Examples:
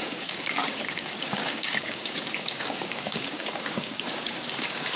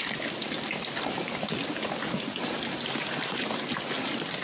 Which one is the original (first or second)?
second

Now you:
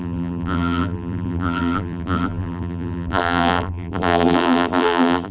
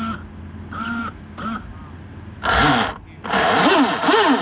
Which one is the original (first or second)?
second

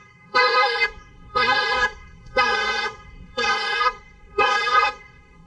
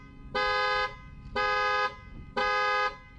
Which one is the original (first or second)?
second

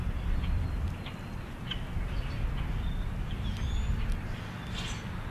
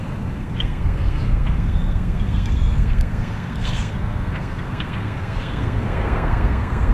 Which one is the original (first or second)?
first